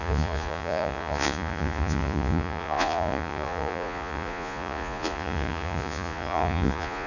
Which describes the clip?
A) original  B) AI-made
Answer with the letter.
B